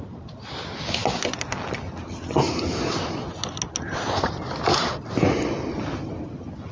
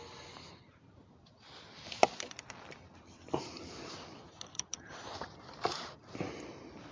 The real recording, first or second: first